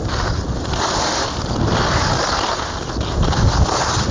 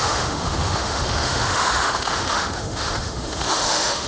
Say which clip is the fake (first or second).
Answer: second